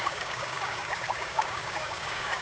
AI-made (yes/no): yes